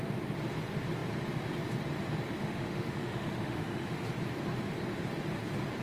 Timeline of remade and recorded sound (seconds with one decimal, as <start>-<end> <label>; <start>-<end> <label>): 0.0-2.4 recorded; 2.4-4.1 remade; 4.1-5.8 recorded